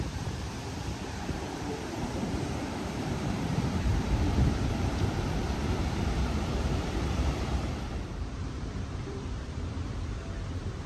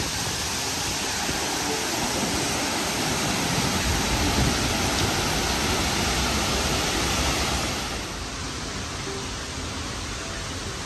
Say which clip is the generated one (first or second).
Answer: first